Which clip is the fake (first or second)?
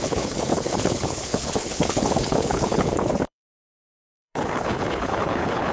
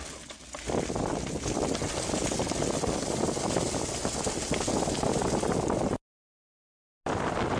first